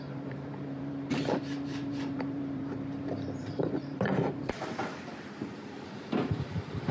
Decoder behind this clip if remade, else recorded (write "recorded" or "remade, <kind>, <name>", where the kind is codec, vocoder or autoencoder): remade, vocoder, BigVGAN v2